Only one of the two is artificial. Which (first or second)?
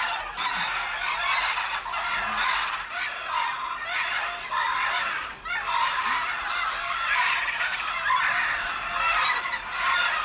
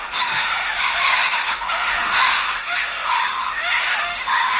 second